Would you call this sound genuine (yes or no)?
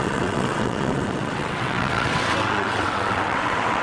no